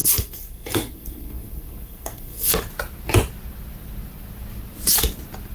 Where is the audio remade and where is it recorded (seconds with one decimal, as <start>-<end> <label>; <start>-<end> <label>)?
0.0-2.5 remade; 2.5-5.5 recorded